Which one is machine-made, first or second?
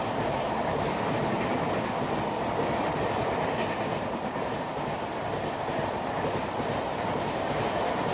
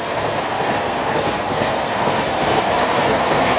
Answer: second